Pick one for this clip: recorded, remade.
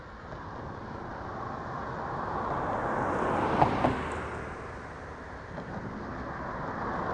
recorded